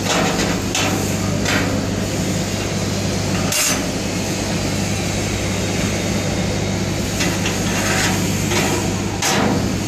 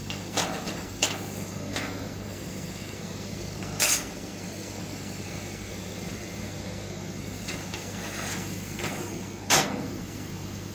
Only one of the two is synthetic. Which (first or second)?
second